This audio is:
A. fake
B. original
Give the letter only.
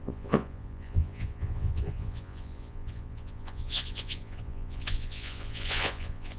A